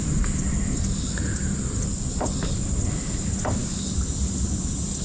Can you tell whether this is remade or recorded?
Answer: recorded